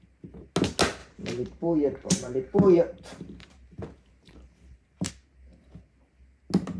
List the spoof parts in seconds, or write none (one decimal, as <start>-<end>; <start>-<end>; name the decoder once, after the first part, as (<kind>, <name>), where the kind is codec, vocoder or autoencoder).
1.0-5.1 (vocoder, BigVGAN v2)